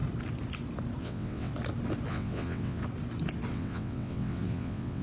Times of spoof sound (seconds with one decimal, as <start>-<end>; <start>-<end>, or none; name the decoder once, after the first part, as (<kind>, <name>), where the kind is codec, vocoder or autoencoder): 1.0-1.5 (vocoder, WaveNeXt); 2.1-2.8; 3.5-5.0